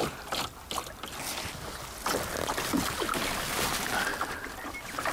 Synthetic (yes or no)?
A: no